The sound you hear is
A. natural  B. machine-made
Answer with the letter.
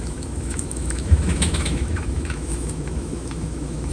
B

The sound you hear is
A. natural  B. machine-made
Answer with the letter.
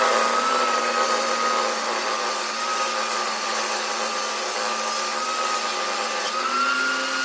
A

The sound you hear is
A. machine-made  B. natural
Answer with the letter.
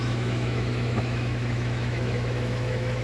A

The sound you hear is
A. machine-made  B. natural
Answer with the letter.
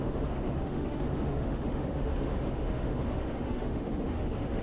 A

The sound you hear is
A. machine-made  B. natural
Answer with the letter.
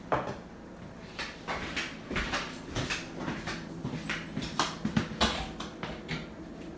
B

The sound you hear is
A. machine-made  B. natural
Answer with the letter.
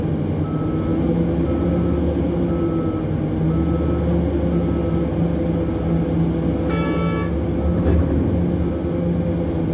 B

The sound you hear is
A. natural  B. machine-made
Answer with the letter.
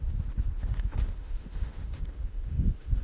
B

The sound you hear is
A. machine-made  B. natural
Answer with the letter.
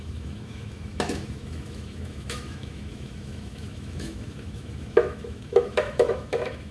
A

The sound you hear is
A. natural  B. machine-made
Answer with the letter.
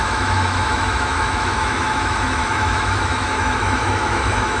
B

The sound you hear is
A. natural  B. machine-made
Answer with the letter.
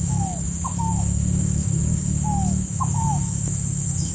B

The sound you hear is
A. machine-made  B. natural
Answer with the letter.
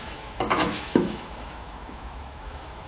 A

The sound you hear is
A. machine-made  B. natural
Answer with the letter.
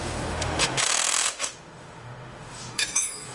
A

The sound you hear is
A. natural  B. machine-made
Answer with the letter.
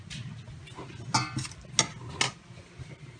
A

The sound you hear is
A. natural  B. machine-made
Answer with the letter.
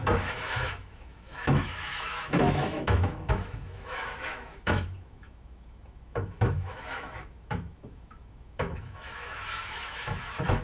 B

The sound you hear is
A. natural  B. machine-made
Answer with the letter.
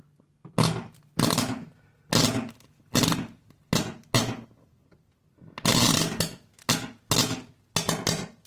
A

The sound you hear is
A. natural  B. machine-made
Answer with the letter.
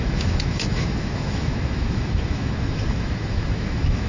B